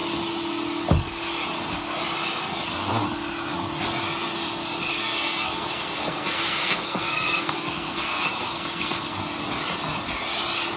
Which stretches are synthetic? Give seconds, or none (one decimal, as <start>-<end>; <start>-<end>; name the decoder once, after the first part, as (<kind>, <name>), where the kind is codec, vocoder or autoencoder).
4.9-9.2 (codec, SNAC)